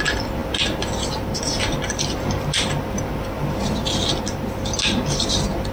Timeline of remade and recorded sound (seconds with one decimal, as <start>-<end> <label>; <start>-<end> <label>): 0.0-5.7 recorded